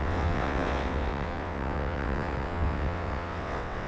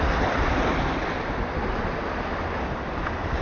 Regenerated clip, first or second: first